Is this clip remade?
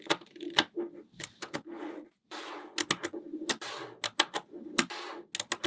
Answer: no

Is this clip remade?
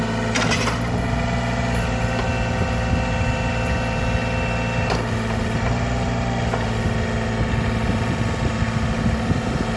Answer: no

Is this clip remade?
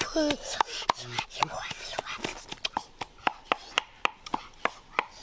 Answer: no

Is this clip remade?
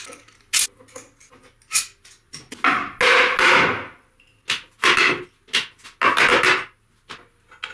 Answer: no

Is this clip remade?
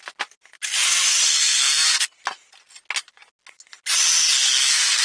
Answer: no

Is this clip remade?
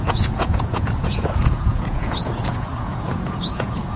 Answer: yes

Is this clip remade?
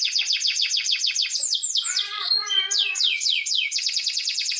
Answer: yes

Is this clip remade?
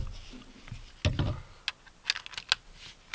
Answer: no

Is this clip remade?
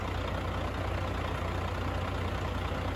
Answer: no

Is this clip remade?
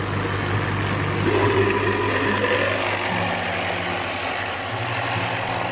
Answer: no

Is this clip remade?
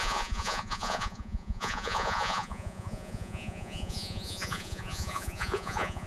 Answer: yes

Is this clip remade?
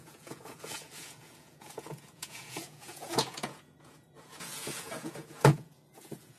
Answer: yes